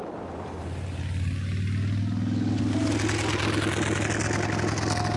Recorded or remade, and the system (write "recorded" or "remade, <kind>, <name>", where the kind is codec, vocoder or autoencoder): recorded